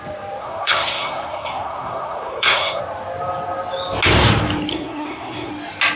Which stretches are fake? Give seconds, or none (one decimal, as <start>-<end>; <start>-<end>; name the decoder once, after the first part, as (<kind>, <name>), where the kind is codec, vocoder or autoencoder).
0.4-2.8 (codec, SNAC); 4.7-5.5